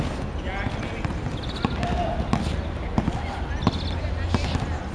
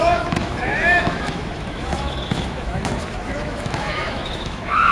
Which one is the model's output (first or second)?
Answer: second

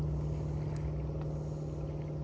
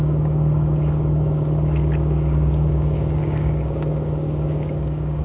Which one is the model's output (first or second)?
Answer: second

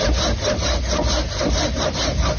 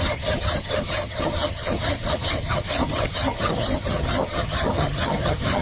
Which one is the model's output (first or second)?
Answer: second